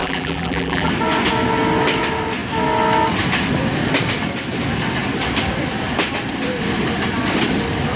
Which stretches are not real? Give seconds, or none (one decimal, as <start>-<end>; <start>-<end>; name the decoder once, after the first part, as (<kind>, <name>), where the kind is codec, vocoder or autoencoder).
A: 0.0-0.9 (vocoder, BigVGAN v2)